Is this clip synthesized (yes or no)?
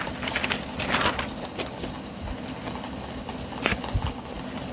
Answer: no